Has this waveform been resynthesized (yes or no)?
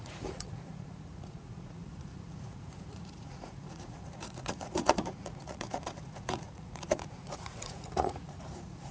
yes